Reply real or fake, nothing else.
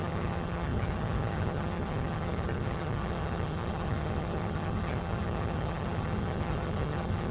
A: fake